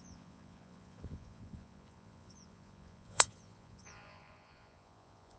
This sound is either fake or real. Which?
fake